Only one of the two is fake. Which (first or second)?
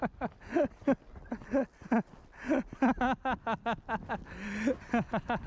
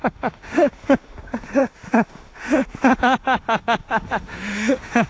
second